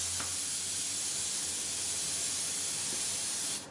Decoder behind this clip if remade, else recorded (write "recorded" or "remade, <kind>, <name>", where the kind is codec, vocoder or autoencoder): recorded